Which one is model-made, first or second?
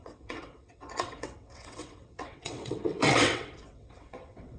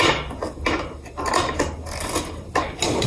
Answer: first